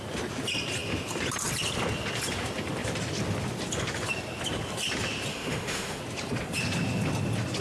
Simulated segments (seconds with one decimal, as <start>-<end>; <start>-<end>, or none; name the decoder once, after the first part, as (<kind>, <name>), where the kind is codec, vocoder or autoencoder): 5.3-6.0 (autoencoder, DAC-VAE)